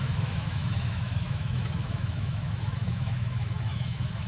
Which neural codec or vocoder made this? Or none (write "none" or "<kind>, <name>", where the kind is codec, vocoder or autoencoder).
autoencoder, DAC-VAE